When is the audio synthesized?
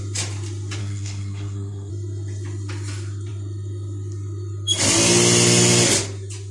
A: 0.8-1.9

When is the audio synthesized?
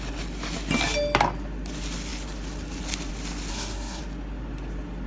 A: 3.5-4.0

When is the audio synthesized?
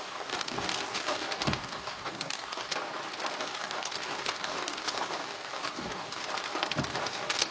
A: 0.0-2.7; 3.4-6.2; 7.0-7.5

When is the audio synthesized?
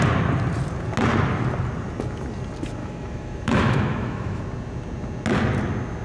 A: 2.8-4.4